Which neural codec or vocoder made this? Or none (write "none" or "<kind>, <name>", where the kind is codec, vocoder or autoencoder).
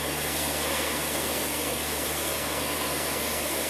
codec, SNAC